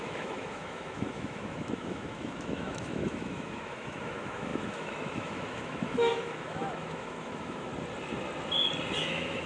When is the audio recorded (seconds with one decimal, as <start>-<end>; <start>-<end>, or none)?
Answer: 7.7-9.0